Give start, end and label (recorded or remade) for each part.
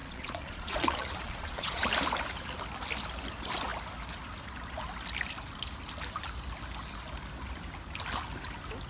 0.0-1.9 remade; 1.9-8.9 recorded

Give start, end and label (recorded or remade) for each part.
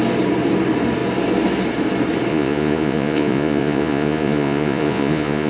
0.0-2.3 recorded; 2.3-5.5 remade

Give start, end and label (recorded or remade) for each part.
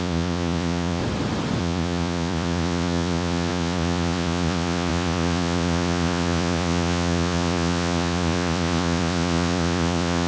0.0-1.0 remade; 1.0-1.6 recorded; 1.6-10.3 remade